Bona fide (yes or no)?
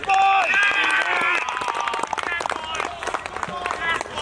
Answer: yes